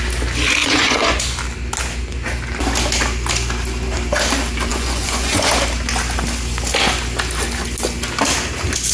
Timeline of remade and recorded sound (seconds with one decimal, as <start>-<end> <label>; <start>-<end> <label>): 0.0-0.6 recorded; 0.6-1.2 remade; 1.2-4.7 recorded; 4.7-5.5 remade; 5.5-8.9 recorded